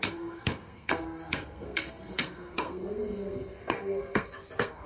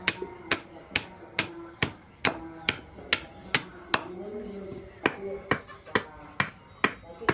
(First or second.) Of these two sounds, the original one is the second